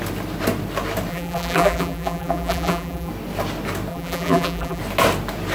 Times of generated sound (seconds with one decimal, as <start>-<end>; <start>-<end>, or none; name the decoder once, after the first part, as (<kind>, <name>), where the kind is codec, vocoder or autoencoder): 1.1-3.1 (vocoder, BigVGAN v2); 3.9-4.8

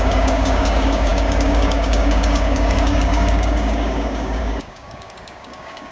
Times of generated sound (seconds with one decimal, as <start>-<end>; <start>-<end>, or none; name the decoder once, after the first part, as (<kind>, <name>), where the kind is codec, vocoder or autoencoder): 0.0-5.9 (codec, DAC)

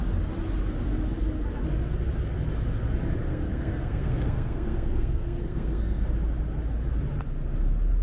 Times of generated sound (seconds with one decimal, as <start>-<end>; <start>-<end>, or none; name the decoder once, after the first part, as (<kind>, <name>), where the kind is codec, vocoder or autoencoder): 3.3-6.1 (codec, SNAC)

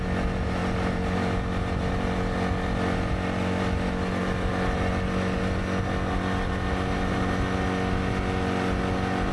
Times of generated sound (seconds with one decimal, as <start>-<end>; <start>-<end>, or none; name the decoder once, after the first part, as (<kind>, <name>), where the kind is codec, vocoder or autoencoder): none

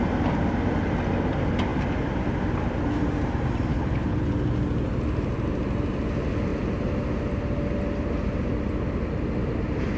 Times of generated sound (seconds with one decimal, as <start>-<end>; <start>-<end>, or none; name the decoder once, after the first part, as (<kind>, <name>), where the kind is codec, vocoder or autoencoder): 3.7-4.3 (codec, HILCodec)

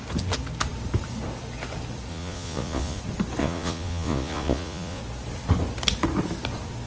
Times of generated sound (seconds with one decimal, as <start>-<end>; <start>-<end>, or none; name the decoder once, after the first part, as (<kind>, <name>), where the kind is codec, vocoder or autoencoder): 2.1-3.0 (vocoder, Vocos); 3.4-5.0

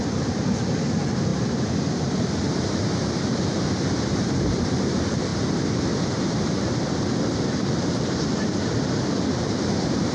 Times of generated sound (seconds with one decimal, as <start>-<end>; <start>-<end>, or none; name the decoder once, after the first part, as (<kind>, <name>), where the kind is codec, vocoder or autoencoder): 0.0-5.3 (vocoder, BigVGAN v2); 6.1-10.1

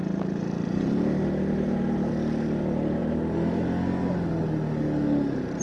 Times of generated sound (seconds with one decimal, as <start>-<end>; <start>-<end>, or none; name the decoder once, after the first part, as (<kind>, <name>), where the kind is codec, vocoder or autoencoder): 0.0-2.1 (vocoder, BigVGAN v2)